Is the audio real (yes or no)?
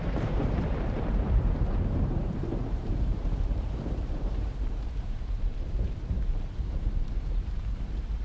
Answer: no